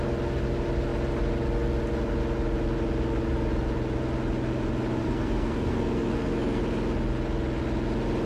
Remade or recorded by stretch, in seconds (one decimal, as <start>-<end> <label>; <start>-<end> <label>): 0.0-5.0 recorded; 5.0-6.6 remade; 6.6-8.3 recorded